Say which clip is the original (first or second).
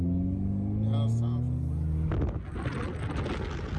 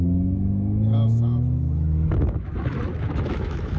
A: first